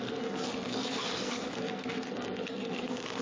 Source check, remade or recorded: remade